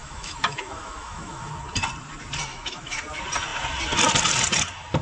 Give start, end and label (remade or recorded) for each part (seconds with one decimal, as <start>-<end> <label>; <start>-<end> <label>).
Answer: 0.0-1.5 remade; 1.5-2.5 recorded; 2.5-3.0 remade; 3.0-5.0 recorded